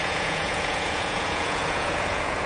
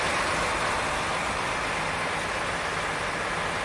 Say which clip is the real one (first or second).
second